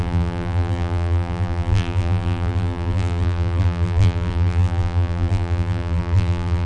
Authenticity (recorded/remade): remade